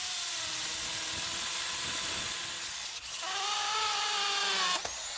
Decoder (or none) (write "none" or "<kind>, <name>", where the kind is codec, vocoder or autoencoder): none